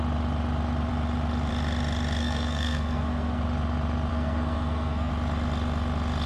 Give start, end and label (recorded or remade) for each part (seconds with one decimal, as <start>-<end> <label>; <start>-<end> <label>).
0.0-2.2 recorded; 2.2-3.4 remade; 3.4-4.1 recorded; 4.1-5.1 remade; 5.1-6.3 recorded